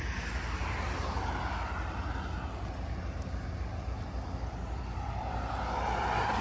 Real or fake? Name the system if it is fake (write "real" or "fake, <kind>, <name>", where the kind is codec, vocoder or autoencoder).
real